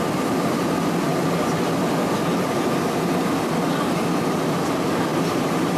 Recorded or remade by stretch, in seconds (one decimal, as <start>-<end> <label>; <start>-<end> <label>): 0.0-5.8 recorded